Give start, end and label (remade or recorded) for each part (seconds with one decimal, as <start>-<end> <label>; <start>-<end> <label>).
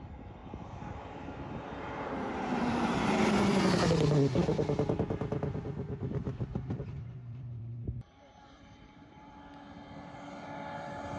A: 0.0-0.4 recorded; 0.4-3.1 remade; 3.1-6.5 recorded; 6.5-9.3 remade; 9.3-11.2 recorded